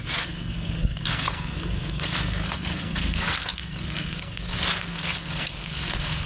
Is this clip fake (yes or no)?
yes